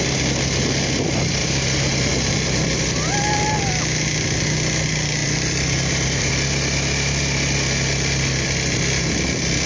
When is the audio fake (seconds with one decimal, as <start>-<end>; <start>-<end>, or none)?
1.4-2.1; 5.2-6.3